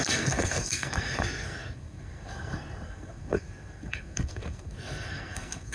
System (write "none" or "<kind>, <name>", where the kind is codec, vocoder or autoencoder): codec, SNAC